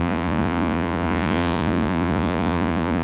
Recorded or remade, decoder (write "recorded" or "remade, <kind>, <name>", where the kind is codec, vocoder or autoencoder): remade, vocoder, Vocos